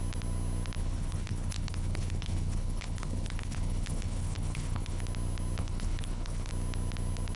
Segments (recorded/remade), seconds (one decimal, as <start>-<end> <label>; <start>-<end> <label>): 0.0-0.8 recorded; 0.8-5.0 remade; 5.0-5.6 recorded; 5.6-6.5 remade; 6.5-7.4 recorded